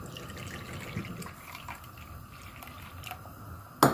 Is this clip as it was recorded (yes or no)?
yes